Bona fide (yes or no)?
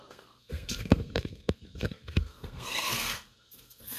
no